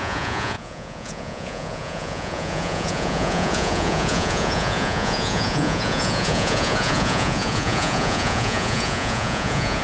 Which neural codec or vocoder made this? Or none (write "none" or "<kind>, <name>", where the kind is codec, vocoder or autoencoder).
vocoder, Vocos